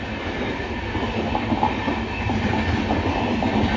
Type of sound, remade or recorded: recorded